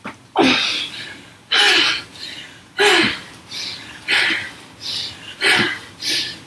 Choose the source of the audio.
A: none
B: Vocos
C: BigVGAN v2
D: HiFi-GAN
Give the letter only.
A